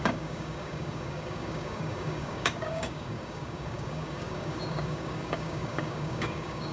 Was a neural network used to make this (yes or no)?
yes